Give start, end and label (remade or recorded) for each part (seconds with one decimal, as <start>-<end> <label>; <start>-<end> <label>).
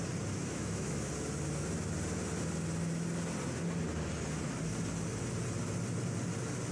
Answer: 0.0-0.4 recorded; 0.4-1.1 remade; 1.1-6.7 recorded